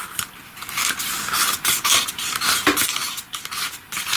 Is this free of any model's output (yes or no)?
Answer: yes